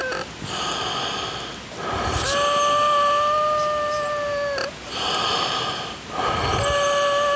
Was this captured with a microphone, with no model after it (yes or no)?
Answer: yes